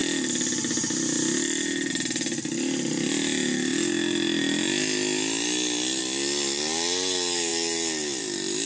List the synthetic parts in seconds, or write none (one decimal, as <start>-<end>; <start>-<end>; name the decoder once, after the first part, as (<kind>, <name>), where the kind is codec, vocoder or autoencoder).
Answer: none